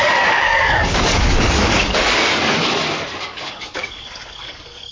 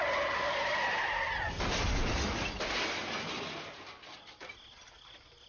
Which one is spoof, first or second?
first